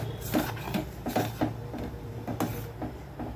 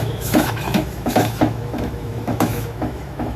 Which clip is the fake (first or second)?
second